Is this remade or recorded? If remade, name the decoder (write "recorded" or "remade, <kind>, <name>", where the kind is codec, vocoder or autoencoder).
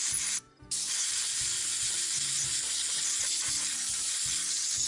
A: remade, vocoder, BigVGAN v2